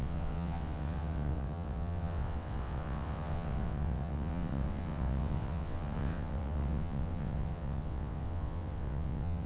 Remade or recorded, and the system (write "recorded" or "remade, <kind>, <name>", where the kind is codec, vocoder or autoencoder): remade, vocoder, WaveNeXt